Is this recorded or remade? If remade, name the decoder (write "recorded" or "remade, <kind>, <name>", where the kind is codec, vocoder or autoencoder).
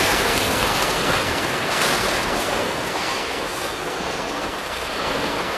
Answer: remade, codec, SNAC